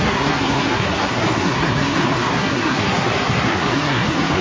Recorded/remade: remade